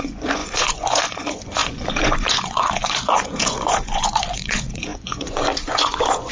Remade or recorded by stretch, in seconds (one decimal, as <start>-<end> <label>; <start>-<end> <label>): 0.0-6.3 remade